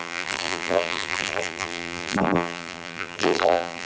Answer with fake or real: fake